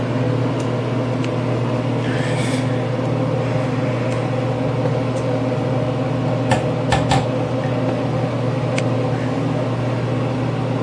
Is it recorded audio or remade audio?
recorded